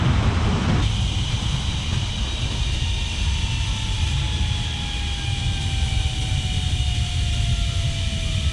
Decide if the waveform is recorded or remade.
recorded